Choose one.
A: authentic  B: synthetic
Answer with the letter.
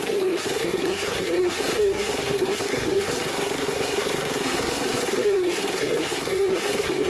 B